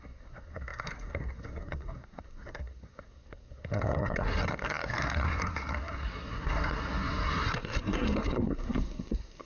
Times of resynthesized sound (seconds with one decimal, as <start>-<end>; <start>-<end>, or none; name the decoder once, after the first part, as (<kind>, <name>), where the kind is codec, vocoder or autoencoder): 0.0-9.5 (codec, SNAC)